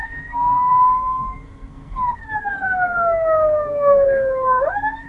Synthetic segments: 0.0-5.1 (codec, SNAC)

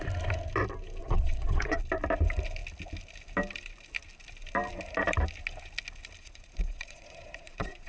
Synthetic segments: 1.0-1.8 (vocoder, Vocos); 6.2-7.9

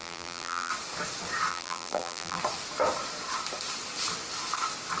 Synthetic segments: 0.0-0.7 (vocoder, BigVGAN v2); 1.5-2.4